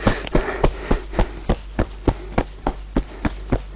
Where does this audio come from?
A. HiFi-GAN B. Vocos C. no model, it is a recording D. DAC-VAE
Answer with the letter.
C